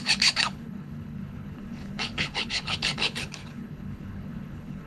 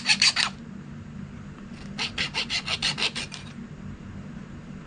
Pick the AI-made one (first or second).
first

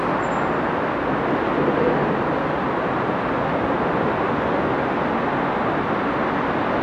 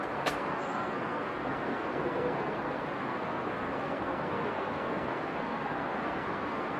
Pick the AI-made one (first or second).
second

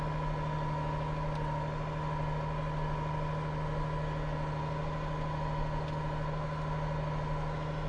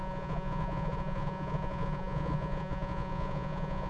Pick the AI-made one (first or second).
second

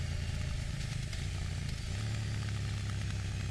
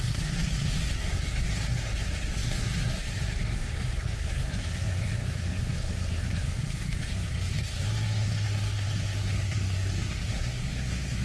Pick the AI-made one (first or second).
second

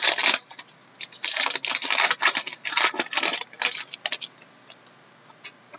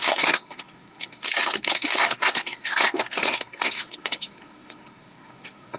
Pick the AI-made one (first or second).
second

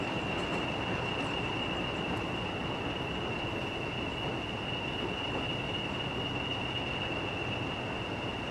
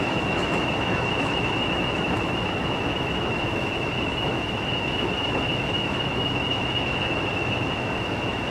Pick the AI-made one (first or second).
second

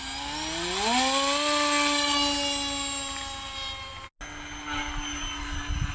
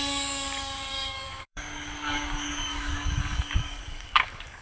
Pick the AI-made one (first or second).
second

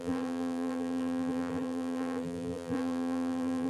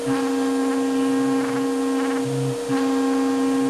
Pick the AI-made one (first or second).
first